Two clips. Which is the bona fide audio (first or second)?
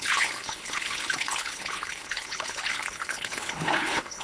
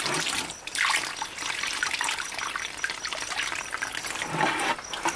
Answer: second